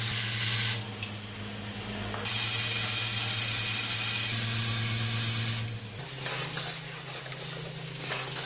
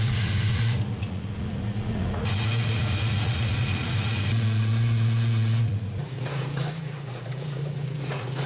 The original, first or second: first